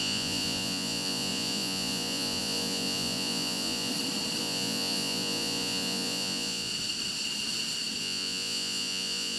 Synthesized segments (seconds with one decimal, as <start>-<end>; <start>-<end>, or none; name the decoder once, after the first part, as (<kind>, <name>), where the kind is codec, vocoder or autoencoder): 0.0-3.9 (vocoder, Vocos); 4.4-6.7; 8.0-9.4